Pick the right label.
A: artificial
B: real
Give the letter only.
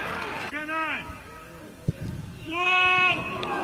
A